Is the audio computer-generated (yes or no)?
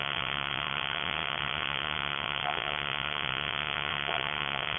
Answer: yes